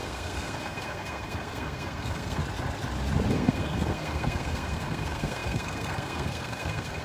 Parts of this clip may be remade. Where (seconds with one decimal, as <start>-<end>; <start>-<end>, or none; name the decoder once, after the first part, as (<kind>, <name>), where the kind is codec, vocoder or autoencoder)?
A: 0.0-2.4 (codec, SNAC); 3.3-7.0